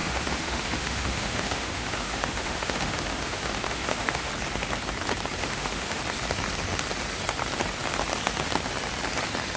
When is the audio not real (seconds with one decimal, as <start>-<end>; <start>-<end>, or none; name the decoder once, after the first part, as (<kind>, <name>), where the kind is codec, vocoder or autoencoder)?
0.0-4.3 (autoencoder, DAC-VAE); 5.4-6.0